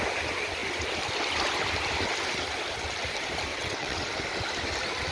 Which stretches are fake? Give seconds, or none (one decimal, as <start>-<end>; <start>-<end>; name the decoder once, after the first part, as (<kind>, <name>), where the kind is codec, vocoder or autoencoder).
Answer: 3.5-4.0 (vocoder, WaveNeXt)